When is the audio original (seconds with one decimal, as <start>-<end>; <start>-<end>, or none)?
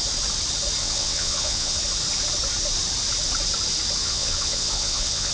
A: 0.0-0.8; 1.8-4.0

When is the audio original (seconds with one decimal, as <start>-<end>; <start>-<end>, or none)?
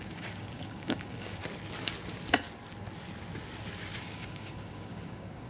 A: 1.4-4.0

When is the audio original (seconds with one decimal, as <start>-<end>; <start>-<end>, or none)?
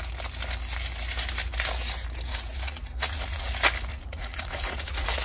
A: 0.0-2.3; 3.5-3.9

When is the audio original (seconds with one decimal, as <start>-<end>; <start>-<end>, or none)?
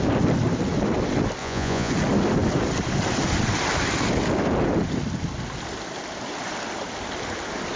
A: 0.0-1.4; 1.9-7.8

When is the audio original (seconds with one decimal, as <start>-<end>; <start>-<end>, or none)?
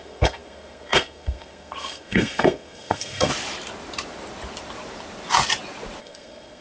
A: 3.3-6.0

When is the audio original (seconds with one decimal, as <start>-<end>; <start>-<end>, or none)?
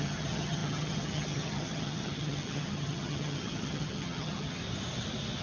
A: 4.6-5.4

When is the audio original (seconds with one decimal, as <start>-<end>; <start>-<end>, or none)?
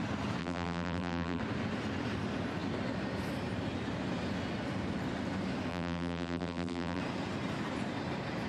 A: 0.0-0.4; 1.4-5.7; 7.0-8.5